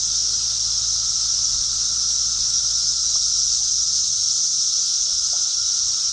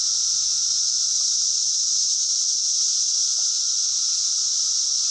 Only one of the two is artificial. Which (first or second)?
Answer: first